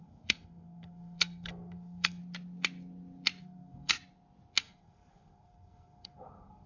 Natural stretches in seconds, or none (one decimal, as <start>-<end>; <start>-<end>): 2.2-3.4; 3.9-4.6